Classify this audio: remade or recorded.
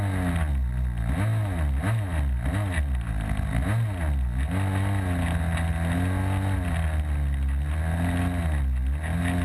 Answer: recorded